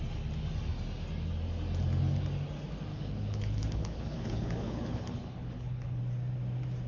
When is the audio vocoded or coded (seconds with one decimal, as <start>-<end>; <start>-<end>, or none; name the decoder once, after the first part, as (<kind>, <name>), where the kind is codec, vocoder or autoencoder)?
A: 2.9-6.0 (codec, HILCodec)